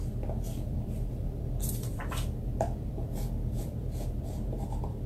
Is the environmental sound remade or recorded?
remade